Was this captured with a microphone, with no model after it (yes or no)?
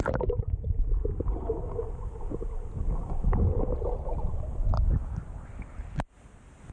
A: yes